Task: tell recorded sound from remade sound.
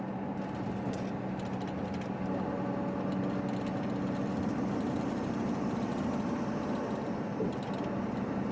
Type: recorded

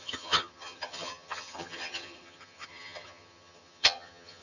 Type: remade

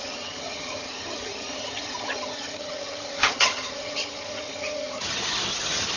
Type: remade